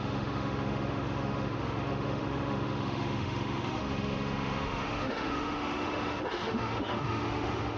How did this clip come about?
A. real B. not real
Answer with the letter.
B